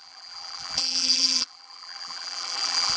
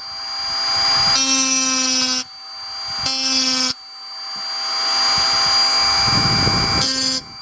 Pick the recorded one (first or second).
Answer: second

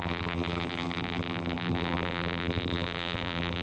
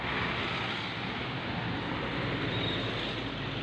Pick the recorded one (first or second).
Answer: second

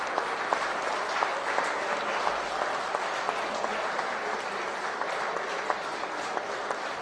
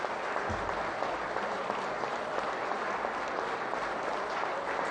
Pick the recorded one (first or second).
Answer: second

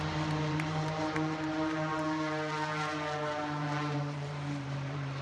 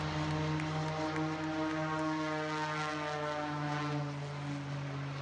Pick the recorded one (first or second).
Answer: second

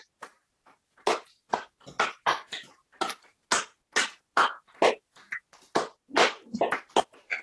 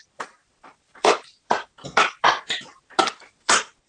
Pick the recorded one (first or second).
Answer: first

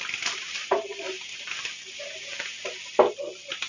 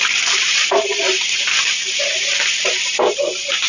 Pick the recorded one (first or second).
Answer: first